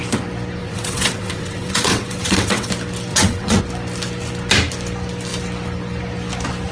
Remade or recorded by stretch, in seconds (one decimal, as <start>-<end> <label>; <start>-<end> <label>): 0.0-0.6 recorded; 0.6-2.7 remade; 2.7-3.1 recorded; 3.1-3.6 remade; 3.6-6.7 recorded